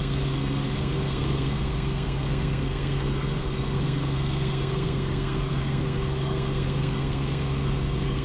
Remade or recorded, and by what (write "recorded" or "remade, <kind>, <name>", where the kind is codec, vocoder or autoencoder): remade, codec, SNAC